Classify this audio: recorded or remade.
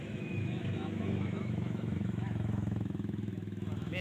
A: remade